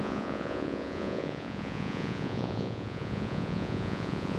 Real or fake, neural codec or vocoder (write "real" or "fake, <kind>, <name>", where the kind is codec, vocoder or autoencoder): fake, vocoder, Vocos